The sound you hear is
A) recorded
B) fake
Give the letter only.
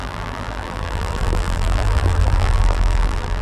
B